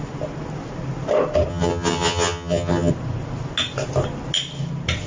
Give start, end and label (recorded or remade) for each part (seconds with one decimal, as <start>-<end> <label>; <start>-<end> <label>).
0.0-1.5 recorded; 1.5-2.9 remade; 2.9-5.1 recorded